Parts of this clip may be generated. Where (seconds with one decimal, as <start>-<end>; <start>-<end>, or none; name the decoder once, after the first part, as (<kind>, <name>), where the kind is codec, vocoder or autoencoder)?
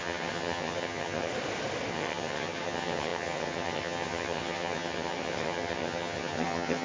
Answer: 0.0-1.3 (vocoder, HiFi-GAN); 1.9-6.8